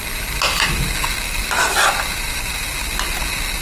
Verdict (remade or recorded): recorded